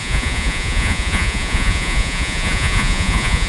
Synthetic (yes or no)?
yes